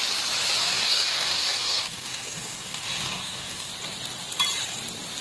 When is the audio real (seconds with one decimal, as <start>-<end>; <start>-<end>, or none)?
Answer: 0.0-0.6; 3.7-5.2